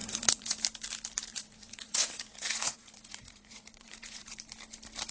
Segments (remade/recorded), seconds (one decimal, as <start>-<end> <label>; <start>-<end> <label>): 0.0-0.6 remade; 0.6-1.3 recorded; 1.3-4.4 remade; 4.4-5.1 recorded